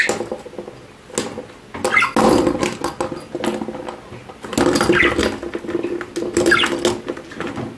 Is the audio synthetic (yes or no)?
no